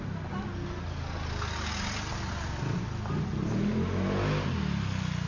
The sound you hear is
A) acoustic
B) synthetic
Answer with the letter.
A